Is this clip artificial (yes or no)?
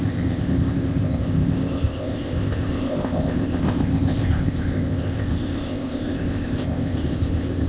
yes